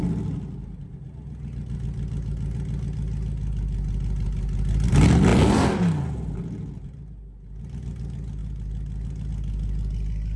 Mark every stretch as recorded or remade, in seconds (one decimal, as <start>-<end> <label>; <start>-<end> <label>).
0.0-10.4 recorded